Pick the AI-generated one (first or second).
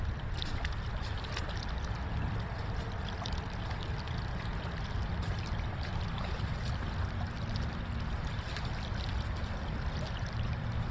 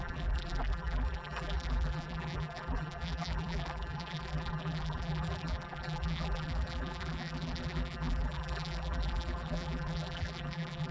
second